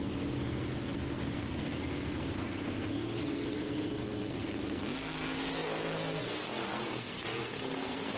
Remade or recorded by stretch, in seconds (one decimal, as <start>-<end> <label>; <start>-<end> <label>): 0.0-8.2 remade